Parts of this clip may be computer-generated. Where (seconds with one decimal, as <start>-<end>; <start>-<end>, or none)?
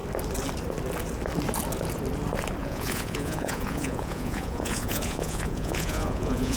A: 2.6-6.6